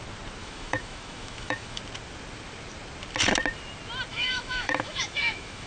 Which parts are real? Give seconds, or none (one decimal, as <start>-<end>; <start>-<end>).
0.0-0.4; 1.8-4.1